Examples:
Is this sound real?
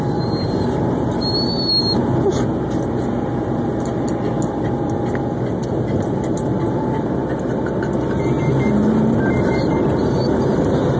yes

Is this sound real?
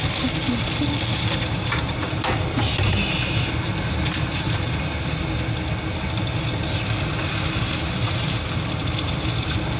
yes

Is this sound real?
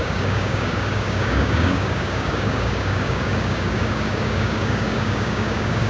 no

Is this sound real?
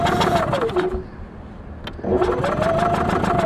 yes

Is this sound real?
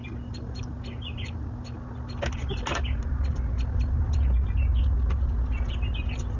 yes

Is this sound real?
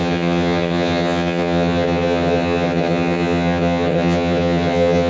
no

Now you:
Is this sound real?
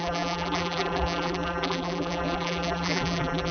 no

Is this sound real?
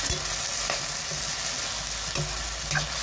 yes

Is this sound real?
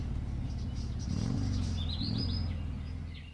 yes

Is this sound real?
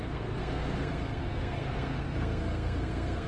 no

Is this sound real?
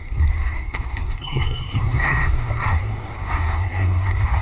no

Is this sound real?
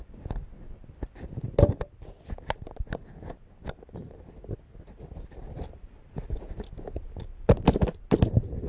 yes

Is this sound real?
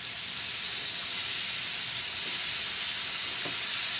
yes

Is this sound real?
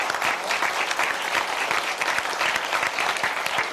yes